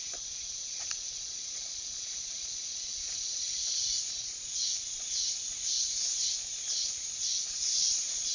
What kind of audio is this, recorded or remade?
remade